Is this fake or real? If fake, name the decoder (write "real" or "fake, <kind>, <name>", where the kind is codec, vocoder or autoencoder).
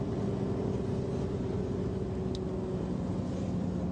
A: real